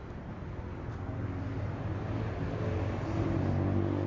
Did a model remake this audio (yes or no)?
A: no